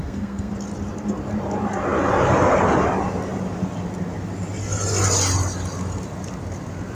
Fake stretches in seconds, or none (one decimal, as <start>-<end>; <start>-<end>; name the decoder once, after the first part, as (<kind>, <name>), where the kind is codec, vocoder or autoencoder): 0.0-0.5 (codec, SNAC)